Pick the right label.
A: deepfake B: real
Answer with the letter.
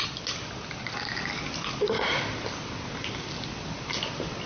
B